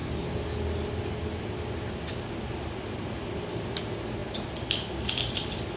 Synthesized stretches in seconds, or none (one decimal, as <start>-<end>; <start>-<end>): 4.2-5.3